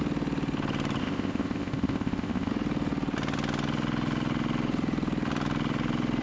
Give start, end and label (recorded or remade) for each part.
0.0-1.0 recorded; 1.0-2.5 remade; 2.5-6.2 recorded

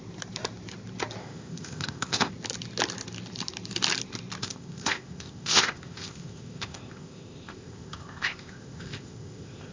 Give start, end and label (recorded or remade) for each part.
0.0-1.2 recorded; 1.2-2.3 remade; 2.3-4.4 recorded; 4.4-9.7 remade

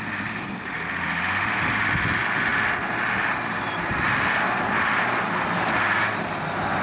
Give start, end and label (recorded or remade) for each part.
0.0-6.8 recorded